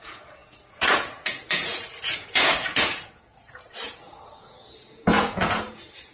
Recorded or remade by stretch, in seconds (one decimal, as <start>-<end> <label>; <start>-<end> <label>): 0.0-6.1 remade